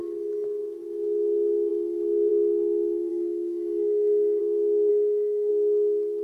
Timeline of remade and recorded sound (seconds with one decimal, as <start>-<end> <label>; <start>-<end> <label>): 0.0-3.1 recorded; 3.1-4.4 remade; 4.4-4.9 recorded; 4.9-5.5 remade; 5.5-6.2 recorded